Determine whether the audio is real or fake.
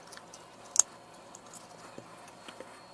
real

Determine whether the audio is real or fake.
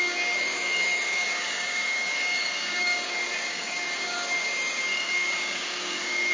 fake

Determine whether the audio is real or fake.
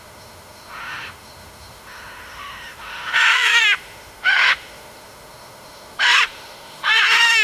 fake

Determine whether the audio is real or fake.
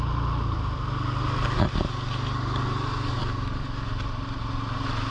real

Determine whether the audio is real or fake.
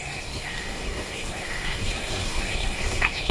fake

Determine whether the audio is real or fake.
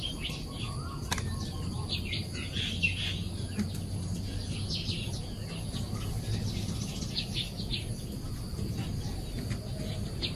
real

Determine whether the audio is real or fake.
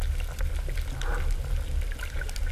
real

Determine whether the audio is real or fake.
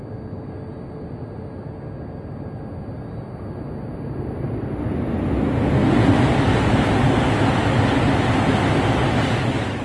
real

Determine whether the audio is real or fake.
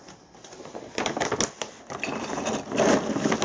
real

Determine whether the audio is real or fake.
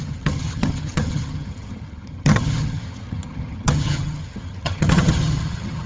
fake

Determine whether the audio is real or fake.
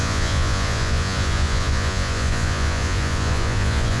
fake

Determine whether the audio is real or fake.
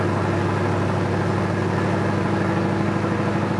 real